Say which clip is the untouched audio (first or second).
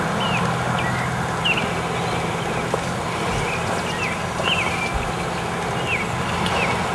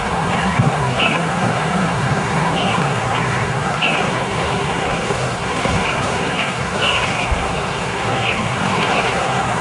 first